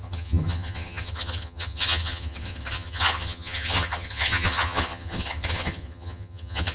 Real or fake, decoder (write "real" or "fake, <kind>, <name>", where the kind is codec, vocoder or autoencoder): fake, vocoder, HiFi-GAN